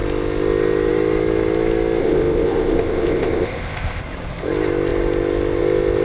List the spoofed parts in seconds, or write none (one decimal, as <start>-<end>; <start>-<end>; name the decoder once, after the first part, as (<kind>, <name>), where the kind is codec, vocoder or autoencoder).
2.0-4.0 (codec, ZipCodec)